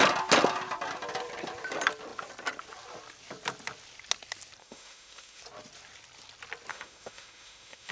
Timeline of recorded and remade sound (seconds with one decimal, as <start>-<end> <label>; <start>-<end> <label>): 0.0-4.6 recorded; 4.6-5.4 remade; 5.4-6.7 recorded; 6.7-7.9 remade